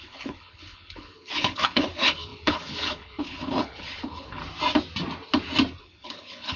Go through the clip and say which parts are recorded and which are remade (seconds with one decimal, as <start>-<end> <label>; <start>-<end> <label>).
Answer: 0.0-4.4 remade; 4.4-5.8 recorded; 5.8-6.6 remade